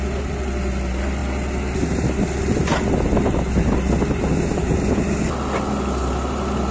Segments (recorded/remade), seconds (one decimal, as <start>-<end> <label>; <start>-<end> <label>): 0.0-6.7 recorded